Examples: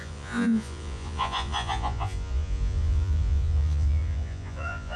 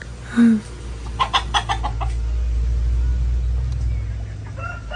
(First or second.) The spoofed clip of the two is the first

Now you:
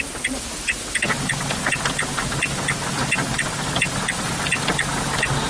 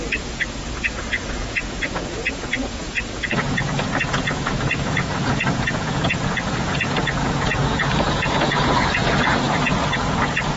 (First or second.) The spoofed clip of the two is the second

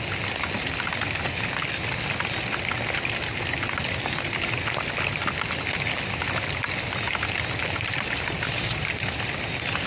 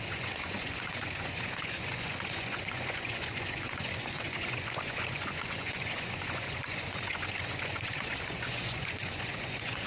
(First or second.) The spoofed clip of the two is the second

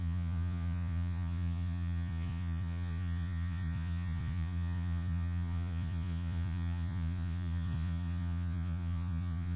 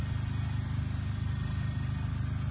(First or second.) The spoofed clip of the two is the first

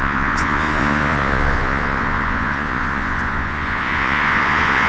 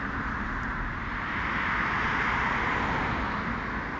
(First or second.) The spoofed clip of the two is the first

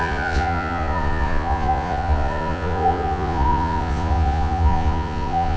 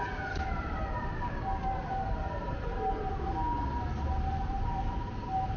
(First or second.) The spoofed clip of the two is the first